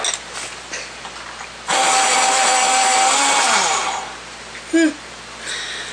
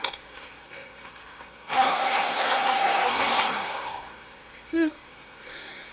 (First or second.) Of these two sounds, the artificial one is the second